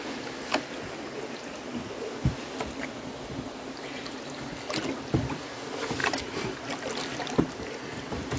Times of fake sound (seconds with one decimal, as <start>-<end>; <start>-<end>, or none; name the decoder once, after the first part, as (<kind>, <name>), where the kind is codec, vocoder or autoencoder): none